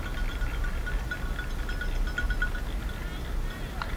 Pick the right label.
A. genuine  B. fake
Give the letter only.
A